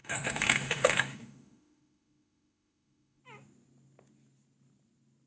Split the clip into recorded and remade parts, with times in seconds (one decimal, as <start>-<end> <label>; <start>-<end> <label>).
0.0-3.2 remade; 3.2-5.3 recorded